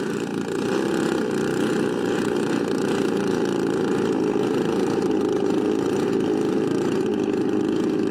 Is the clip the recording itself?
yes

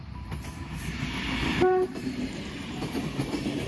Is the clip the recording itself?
no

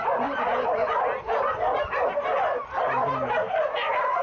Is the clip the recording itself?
yes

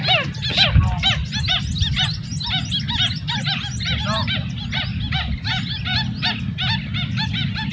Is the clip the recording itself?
yes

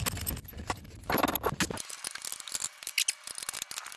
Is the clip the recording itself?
yes